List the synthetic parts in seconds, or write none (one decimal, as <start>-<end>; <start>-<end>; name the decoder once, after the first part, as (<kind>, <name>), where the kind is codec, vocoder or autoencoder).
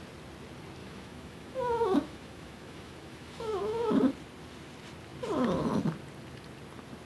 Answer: 0.8-4.0 (autoencoder, DAC-VAE)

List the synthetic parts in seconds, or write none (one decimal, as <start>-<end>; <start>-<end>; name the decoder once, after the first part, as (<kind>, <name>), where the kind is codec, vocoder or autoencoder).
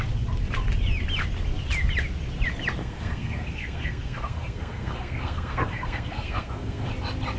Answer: 2.8-6.9 (codec, SNAC)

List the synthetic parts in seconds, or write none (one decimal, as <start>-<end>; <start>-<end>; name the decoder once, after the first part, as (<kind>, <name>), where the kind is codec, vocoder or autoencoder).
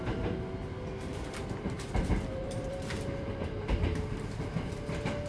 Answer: 1.1-4.3 (vocoder, BigVGAN v2)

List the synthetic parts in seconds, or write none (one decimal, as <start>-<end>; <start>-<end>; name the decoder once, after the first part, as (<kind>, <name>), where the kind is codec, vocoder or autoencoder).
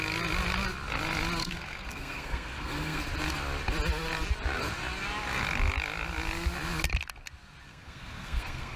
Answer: 1.4-3.0 (codec, SNAC); 7.7-8.8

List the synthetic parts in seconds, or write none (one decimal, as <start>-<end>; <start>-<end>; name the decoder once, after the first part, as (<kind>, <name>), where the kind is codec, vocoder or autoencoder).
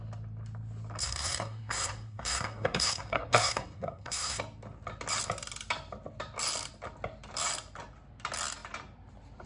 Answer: 1.0-4.4 (codec, SNAC)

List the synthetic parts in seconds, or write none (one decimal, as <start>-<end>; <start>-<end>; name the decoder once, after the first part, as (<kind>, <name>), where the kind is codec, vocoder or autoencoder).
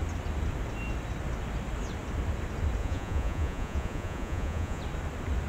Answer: 2.8-4.8 (vocoder, Vocos)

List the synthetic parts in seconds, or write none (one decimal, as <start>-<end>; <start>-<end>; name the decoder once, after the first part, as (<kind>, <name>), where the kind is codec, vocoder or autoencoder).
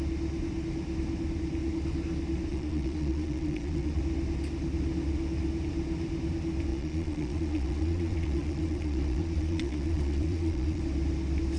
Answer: 2.5-4.0 (vocoder, Vocos); 6.7-10.8